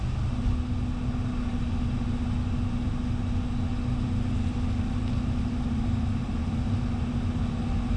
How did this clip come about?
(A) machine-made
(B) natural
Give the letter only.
B